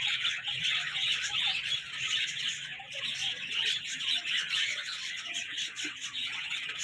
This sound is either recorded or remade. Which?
remade